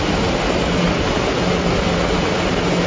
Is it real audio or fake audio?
real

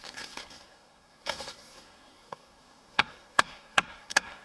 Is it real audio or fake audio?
fake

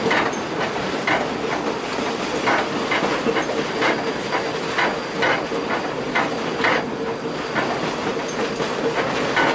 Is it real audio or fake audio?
real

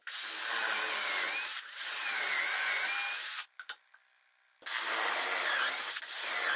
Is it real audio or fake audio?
real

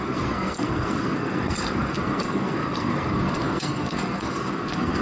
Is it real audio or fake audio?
fake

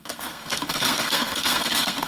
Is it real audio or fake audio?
fake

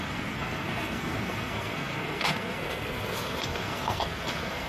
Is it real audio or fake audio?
fake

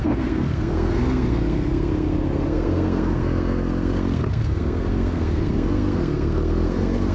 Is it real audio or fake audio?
fake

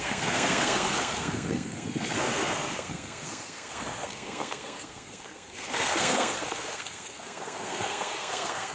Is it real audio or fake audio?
fake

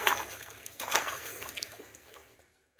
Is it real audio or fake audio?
fake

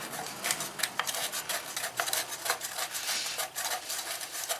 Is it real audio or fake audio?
real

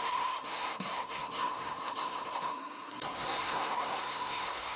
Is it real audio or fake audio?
fake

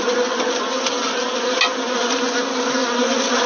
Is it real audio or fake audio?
real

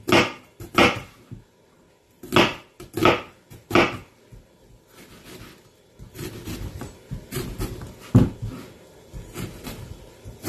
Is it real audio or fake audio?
real